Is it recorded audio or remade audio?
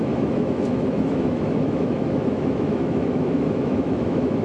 remade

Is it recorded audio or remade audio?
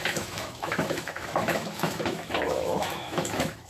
remade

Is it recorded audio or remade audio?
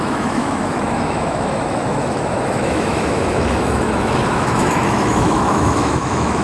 remade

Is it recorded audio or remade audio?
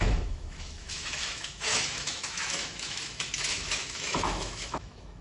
remade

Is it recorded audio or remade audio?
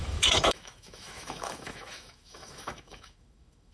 remade